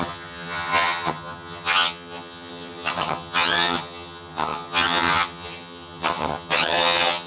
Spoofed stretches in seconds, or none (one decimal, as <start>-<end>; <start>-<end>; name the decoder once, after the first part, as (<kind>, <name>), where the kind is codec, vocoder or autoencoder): 0.0-7.3 (vocoder, HiFi-GAN)